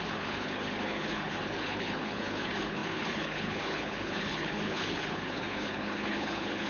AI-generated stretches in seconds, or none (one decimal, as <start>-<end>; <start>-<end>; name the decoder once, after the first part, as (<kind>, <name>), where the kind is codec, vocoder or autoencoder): 0.0-6.7 (codec, HILCodec)